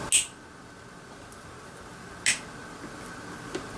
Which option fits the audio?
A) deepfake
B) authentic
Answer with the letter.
B